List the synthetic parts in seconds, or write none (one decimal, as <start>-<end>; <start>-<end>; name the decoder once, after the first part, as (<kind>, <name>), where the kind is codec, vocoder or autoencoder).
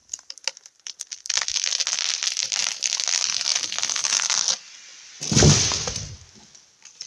2.4-2.9 (vocoder, BigVGAN v2)